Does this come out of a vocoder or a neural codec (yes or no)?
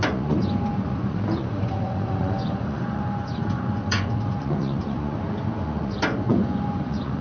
yes